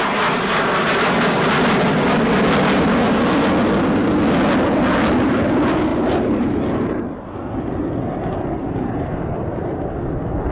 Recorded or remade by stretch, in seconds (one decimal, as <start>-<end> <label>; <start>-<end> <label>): 0.0-5.9 recorded; 5.9-7.0 remade; 7.0-8.6 recorded; 8.6-9.8 remade; 9.8-10.5 recorded